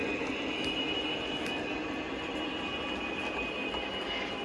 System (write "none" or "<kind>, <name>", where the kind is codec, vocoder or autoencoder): none